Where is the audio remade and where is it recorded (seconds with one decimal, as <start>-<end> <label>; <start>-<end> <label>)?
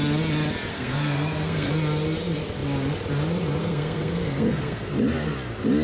0.0-0.7 recorded; 0.7-1.7 remade; 1.7-3.6 recorded; 3.6-4.9 remade; 4.9-5.8 recorded